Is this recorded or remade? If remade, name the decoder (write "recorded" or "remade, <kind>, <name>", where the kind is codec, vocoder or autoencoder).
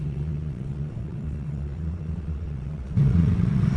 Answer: remade, vocoder, WaveNeXt